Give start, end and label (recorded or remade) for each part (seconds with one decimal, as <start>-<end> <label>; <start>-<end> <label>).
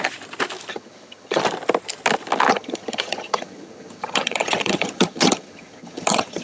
0.0-0.7 recorded; 0.7-1.4 remade; 1.4-2.5 recorded; 2.5-6.4 remade